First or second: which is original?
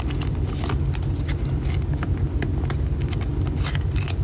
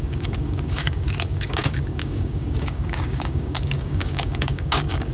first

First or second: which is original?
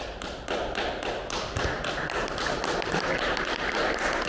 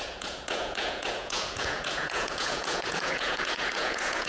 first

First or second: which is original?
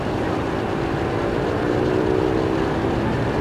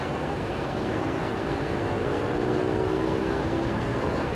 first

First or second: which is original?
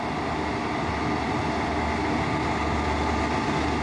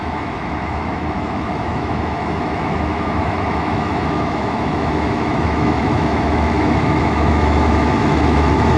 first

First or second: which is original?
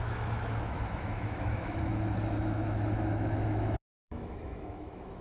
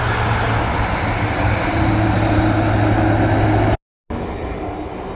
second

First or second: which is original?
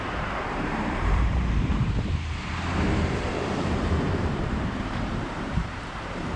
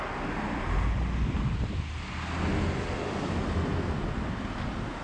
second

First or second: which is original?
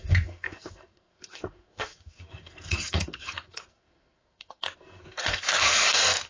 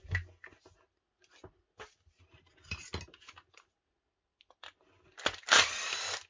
second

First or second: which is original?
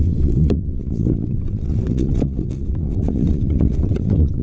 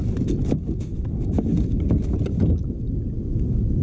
second